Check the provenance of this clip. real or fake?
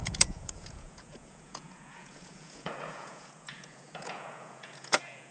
fake